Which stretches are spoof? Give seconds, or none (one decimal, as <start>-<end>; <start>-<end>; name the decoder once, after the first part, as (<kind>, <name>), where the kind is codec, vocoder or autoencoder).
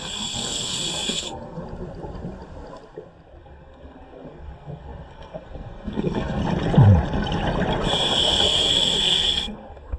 0.0-1.6 (codec, SNAC); 3.4-6.4; 8.2-10.0